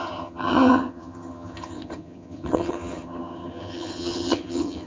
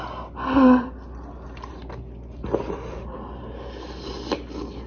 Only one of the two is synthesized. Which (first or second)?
first